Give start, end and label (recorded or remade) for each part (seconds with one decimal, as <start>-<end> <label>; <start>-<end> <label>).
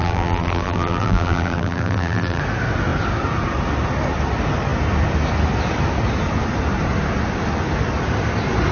0.0-2.4 remade; 2.4-8.7 recorded